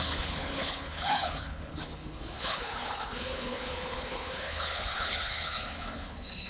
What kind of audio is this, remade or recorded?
remade